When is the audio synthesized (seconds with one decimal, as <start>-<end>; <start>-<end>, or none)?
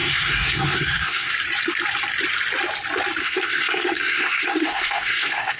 0.0-1.3; 3.2-5.6